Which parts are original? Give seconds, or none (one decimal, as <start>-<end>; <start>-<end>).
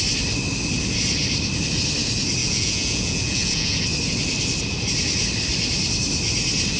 0.0-2.4; 3.8-6.8